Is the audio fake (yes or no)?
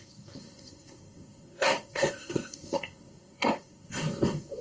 yes